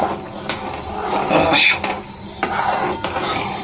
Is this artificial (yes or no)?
no